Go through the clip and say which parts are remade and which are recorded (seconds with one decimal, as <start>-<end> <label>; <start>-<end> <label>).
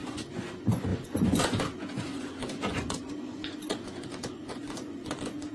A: 0.0-5.5 remade